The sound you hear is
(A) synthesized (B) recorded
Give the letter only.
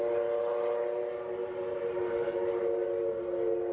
B